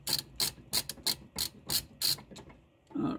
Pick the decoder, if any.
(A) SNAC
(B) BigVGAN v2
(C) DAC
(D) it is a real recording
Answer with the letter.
D